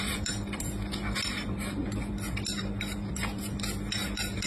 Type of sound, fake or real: real